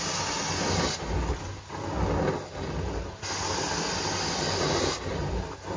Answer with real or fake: real